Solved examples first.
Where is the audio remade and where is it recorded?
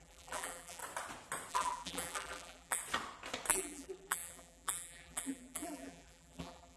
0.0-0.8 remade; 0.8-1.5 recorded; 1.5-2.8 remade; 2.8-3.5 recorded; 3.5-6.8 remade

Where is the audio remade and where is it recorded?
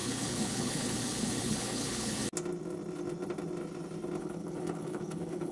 0.0-2.2 remade; 2.2-4.2 recorded; 4.2-5.5 remade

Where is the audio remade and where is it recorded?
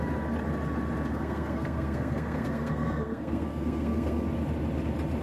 0.0-1.1 recorded; 1.1-4.2 remade; 4.2-5.2 recorded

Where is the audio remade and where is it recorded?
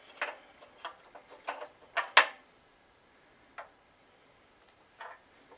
0.0-5.6 recorded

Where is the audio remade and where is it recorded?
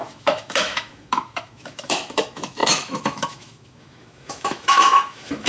0.0-5.5 remade